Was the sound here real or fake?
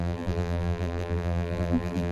fake